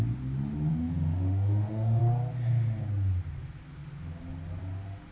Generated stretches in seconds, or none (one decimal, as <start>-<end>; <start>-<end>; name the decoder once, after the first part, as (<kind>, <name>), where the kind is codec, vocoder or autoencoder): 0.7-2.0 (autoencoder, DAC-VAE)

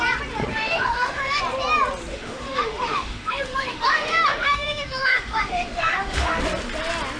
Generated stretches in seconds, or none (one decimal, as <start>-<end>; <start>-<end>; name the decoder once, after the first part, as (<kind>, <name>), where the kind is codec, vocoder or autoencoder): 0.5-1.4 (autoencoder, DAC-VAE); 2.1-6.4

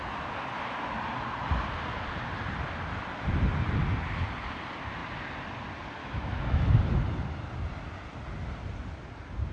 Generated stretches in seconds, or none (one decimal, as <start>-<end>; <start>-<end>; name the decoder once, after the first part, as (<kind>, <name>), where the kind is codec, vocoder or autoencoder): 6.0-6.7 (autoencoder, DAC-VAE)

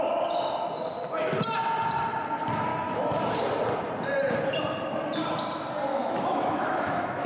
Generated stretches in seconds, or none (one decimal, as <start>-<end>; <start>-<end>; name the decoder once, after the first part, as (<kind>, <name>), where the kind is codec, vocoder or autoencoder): 2.7-3.3 (autoencoder, DAC-VAE); 5.9-7.3

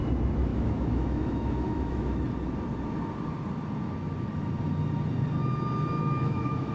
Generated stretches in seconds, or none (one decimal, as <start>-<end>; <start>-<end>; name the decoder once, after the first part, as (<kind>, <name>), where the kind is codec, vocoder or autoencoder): 0.5-2.2 (autoencoder, DAC-VAE); 6.0-6.7

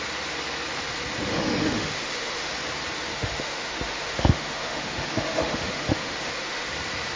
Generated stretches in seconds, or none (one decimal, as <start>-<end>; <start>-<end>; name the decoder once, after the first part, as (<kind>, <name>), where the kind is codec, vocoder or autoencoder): 1.3-2.5 (autoencoder, DAC-VAE); 3.1-6.7